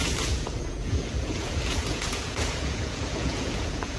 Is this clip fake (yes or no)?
yes